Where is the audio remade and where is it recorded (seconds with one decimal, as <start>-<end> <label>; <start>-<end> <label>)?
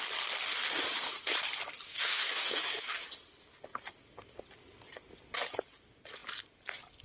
0.0-1.9 recorded; 1.9-3.1 remade; 3.1-7.0 recorded